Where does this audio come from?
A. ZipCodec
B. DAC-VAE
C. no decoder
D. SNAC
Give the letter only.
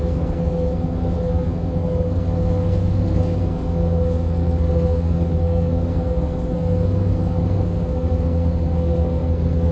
D